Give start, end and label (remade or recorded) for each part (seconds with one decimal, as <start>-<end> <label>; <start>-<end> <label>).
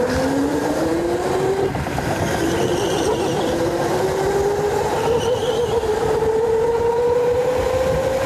0.0-0.5 recorded; 0.5-2.2 remade; 2.2-2.7 recorded; 2.7-4.4 remade; 4.4-5.4 recorded; 5.4-7.4 remade; 7.4-8.3 recorded